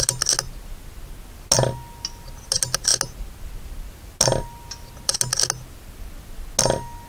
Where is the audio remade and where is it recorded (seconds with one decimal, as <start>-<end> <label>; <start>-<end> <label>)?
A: 0.0-7.1 recorded